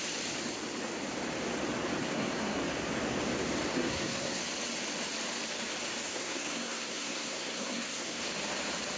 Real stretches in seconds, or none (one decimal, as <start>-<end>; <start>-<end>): 0.0-2.0; 2.6-3.7; 4.4-6.1; 8.2-9.0